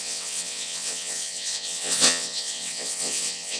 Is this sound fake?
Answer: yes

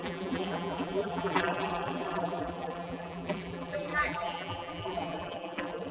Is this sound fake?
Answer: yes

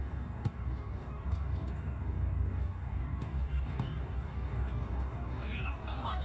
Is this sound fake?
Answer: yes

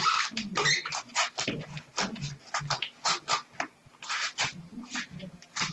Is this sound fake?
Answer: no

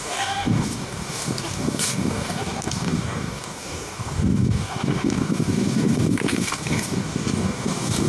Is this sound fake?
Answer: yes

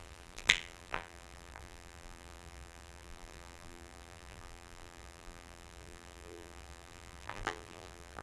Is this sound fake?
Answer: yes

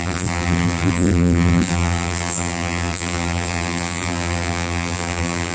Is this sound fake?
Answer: yes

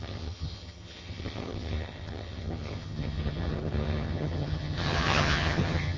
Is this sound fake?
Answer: yes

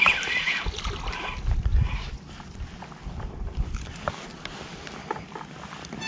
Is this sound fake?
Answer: no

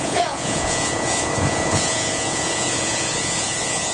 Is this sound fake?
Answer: yes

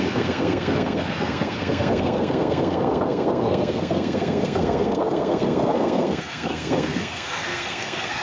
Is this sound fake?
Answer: yes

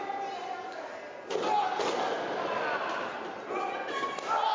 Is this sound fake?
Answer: no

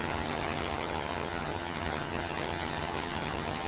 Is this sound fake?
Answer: yes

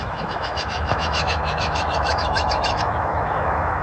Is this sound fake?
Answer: yes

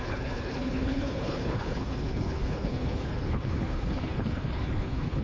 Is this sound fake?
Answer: yes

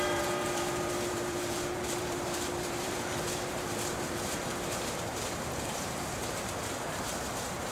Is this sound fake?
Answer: yes